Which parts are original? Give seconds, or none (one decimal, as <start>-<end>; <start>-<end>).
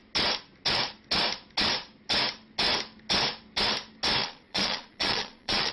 0.0-4.2